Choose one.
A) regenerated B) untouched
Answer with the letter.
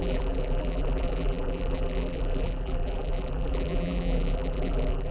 A